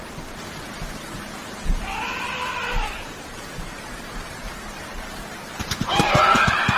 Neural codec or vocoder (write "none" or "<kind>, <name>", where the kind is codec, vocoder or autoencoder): vocoder, BigVGAN v2